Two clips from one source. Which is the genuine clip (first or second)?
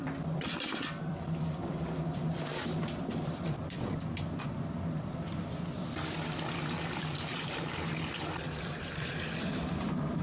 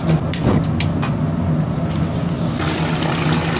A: second